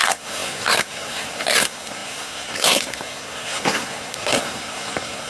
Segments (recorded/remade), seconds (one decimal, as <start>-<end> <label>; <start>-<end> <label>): 0.0-5.3 remade